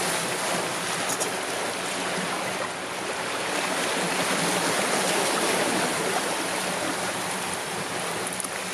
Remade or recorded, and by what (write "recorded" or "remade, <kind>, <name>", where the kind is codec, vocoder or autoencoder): recorded